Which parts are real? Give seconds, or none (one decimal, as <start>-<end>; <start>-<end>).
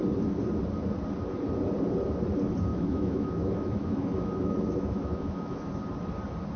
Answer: 0.0-2.7; 5.7-6.6